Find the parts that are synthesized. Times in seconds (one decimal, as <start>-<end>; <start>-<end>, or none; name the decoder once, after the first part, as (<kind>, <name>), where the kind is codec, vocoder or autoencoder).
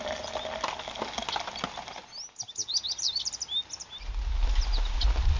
none